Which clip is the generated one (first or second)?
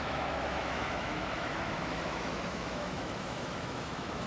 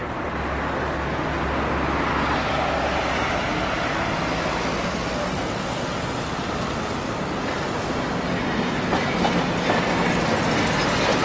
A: first